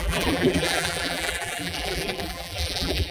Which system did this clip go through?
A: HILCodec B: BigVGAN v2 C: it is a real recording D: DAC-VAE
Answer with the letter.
B